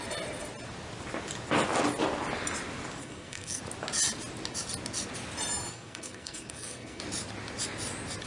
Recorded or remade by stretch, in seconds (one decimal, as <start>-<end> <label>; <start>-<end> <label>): 0.0-3.0 recorded; 3.0-3.6 remade; 3.6-5.7 recorded; 5.7-7.0 remade; 7.0-8.3 recorded